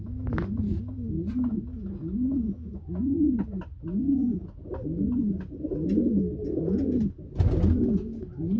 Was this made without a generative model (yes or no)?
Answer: yes